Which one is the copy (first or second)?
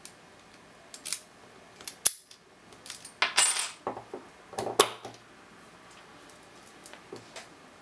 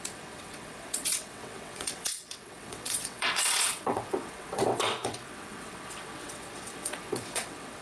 second